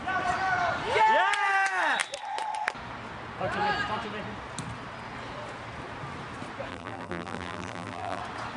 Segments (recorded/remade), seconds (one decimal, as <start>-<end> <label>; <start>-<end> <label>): 0.0-6.7 recorded; 6.7-8.2 remade; 8.2-8.6 recorded